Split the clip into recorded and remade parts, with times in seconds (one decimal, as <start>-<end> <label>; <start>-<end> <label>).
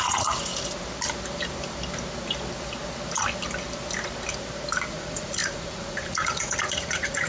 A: 0.0-0.5 remade; 0.5-4.9 recorded; 4.9-7.3 remade